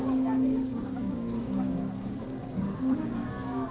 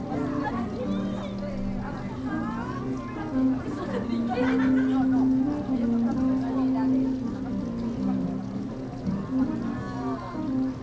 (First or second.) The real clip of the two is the second